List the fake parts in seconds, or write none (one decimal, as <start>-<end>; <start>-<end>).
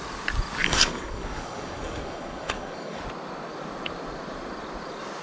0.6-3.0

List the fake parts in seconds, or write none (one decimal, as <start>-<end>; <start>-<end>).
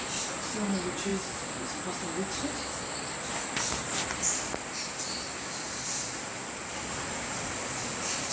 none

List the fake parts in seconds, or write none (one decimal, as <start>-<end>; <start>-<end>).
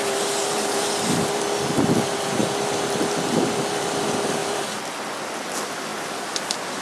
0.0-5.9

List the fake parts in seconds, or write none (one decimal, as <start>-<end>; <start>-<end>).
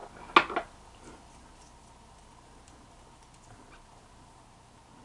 none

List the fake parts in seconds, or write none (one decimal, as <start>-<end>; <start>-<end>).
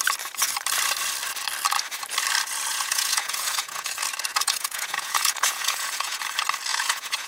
2.7-3.9; 4.3-6.2; 6.7-7.3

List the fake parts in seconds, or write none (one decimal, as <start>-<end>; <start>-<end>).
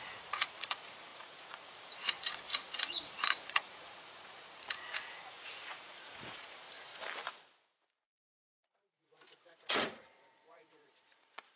0.0-6.9; 8.5-11.6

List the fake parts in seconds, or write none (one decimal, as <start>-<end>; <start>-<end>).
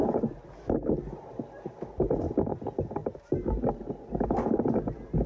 none